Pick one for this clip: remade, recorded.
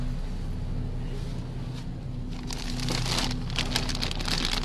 recorded